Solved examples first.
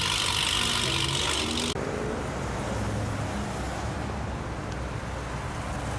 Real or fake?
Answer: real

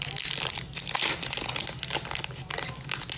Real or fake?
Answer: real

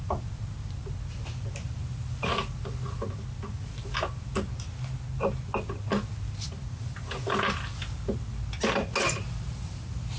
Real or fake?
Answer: real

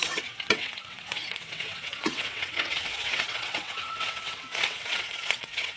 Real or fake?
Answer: fake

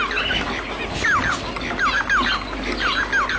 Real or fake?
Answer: real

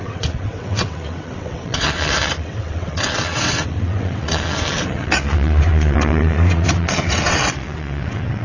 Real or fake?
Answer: fake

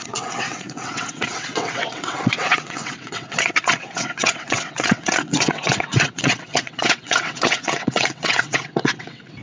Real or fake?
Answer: fake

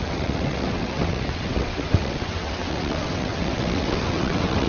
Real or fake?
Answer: fake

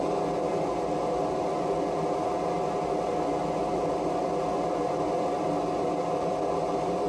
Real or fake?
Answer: real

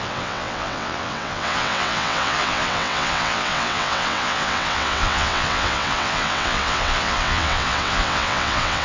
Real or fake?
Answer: fake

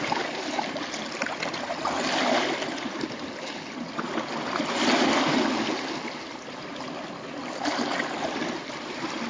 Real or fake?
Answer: real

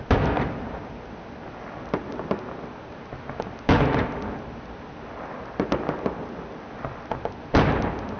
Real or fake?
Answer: real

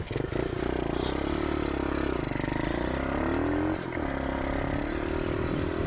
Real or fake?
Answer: real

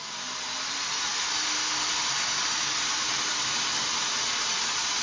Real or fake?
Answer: real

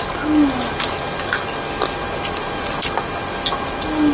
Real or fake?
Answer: real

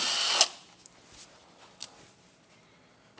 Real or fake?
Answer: real